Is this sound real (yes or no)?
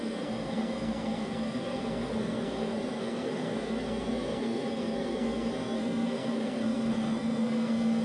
no